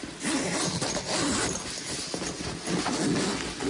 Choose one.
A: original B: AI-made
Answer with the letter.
A